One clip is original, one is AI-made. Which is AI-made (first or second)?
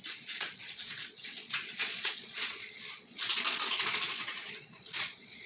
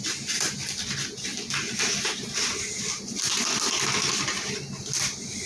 first